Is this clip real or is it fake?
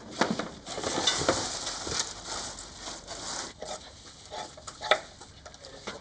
real